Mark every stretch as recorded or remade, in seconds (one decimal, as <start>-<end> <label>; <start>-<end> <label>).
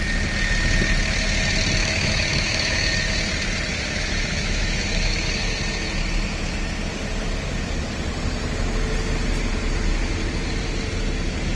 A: 0.0-1.8 recorded; 1.8-3.2 remade; 3.2-3.7 recorded; 3.7-5.3 remade; 5.3-11.6 recorded